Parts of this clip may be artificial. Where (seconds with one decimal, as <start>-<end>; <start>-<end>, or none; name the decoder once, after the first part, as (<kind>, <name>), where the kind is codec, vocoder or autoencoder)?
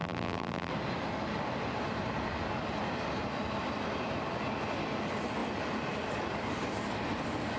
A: 0.0-0.7 (vocoder, BigVGAN v2)